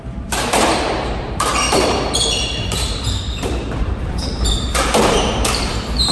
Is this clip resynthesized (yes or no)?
yes